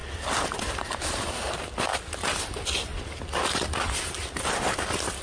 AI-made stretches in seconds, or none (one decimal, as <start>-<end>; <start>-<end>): none